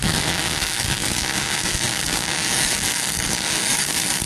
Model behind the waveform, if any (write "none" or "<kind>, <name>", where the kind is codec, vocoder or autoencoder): codec, DAC